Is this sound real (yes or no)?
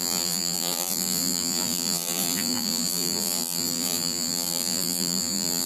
no